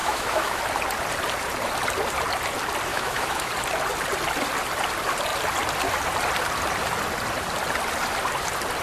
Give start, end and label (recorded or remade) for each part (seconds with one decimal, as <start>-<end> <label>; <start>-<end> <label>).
0.0-0.6 remade; 0.6-2.9 recorded; 2.9-3.5 remade; 3.5-8.8 recorded